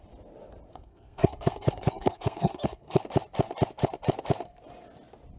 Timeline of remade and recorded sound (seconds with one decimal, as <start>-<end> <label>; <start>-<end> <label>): 0.0-0.7 recorded; 0.7-3.0 remade; 3.0-5.4 recorded